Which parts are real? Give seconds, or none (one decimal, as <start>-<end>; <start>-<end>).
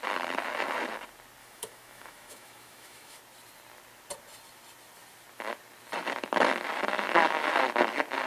0.0-1.4; 3.2-8.3